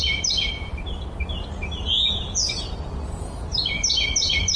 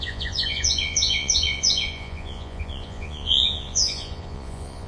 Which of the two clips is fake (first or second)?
second